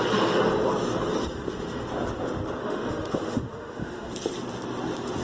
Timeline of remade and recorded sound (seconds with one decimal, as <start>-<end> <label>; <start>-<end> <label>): 0.0-2.6 recorded; 2.6-4.1 remade; 4.1-5.2 recorded